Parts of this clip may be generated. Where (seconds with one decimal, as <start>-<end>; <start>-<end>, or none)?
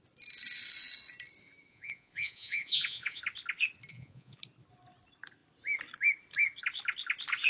1.7-3.2; 3.9-4.4